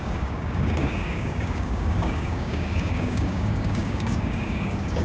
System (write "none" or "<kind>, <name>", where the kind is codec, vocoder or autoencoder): codec, DAC